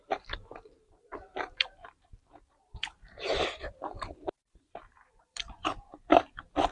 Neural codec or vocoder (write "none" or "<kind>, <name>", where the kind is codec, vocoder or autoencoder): vocoder, BigVGAN v2